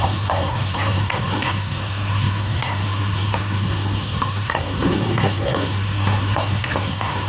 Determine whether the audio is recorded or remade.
remade